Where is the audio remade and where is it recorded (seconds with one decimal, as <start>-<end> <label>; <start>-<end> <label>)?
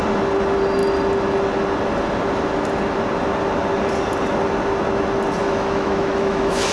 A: 0.0-5.4 recorded; 5.4-6.7 remade